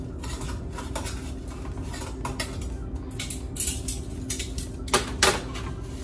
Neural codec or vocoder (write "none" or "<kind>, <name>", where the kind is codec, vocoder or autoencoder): none